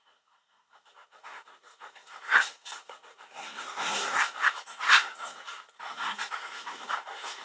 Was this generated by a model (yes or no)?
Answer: yes